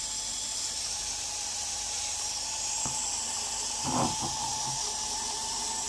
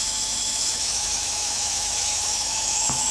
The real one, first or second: first